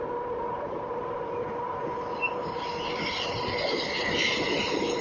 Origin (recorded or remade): recorded